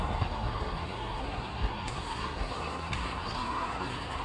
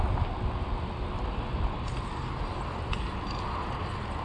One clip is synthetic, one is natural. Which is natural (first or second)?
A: second